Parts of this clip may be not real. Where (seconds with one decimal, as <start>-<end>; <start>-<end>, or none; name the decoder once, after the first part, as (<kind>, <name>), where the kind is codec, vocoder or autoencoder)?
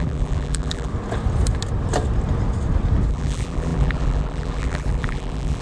0.0-0.9 (vocoder, BigVGAN v2); 3.1-5.6